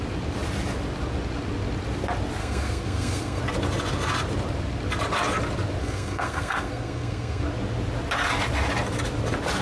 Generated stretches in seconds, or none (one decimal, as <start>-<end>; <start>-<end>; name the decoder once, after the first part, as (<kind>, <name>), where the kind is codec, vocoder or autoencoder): 2.4-3.4 (codec, SNAC); 5.8-7.4